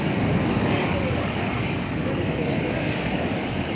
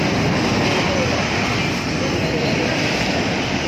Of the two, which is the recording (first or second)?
second